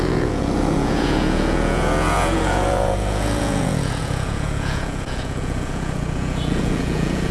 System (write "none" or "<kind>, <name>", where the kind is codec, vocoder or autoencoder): vocoder, Vocos